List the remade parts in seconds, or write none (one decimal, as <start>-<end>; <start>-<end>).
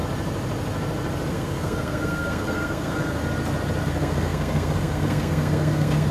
1.3-3.2; 3.8-6.1